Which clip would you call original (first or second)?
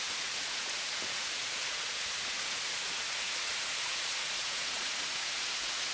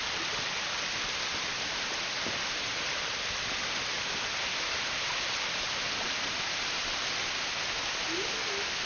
second